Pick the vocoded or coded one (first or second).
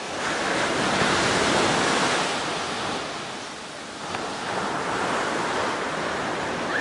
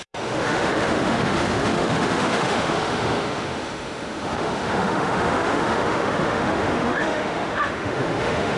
second